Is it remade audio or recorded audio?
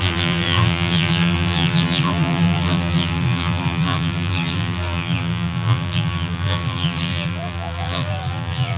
remade